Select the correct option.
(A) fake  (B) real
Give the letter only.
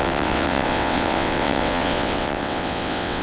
A